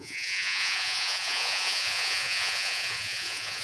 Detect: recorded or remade remade